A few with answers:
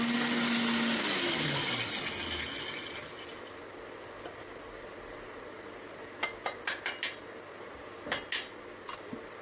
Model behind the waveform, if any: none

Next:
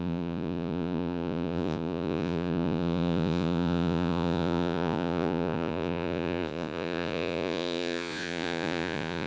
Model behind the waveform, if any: vocoder, Vocos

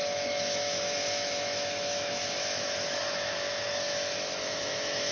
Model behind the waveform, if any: autoencoder, DAC-VAE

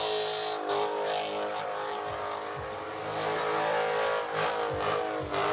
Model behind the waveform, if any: none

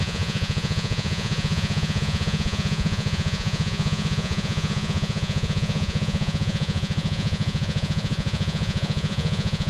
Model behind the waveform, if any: vocoder, Vocos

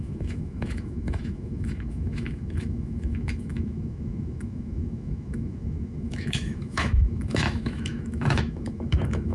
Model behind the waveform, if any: autoencoder, DAC-VAE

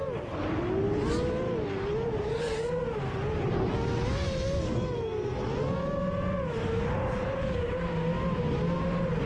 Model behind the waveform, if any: none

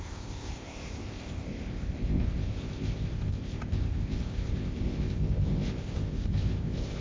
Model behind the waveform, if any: codec, ZipCodec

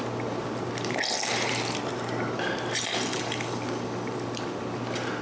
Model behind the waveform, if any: vocoder, BigVGAN v2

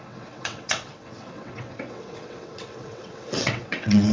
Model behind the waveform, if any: vocoder, WaveNeXt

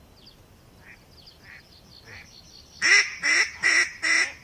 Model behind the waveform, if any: none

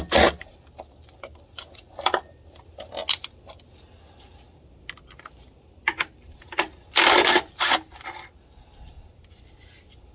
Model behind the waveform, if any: none